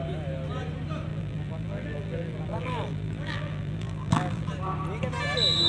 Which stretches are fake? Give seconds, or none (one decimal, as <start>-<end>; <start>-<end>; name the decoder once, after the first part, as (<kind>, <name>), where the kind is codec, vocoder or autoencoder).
1.1-4.5 (vocoder, BigVGAN v2)